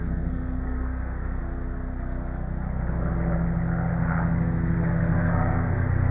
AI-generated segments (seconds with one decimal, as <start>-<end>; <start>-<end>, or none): 0.0-1.4; 5.1-6.1